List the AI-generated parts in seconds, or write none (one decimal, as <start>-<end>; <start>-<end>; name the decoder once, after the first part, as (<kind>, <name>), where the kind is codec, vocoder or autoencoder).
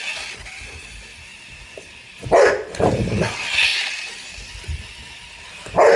none